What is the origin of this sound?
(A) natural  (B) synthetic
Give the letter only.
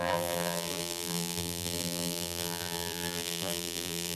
B